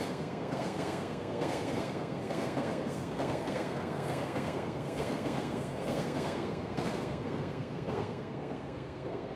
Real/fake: fake